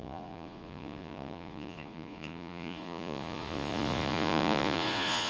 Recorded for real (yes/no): no